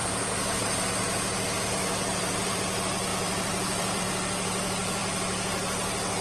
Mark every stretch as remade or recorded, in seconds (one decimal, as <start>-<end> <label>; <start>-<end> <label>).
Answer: 0.0-0.9 remade; 0.9-1.8 recorded; 1.8-2.6 remade; 2.6-3.1 recorded; 3.1-4.0 remade; 4.0-6.2 recorded